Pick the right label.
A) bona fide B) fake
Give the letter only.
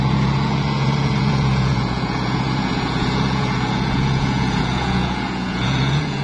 B